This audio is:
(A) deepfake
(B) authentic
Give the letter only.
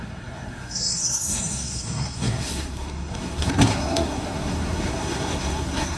A